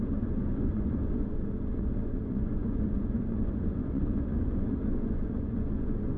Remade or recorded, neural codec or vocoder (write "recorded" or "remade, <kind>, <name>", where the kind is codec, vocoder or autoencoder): remade, vocoder, Vocos